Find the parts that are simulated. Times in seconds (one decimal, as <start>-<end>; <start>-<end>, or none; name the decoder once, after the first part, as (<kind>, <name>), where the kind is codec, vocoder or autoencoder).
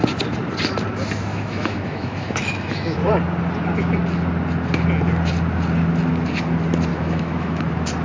1.3-3.1 (autoencoder, DAC-VAE); 6.9-7.6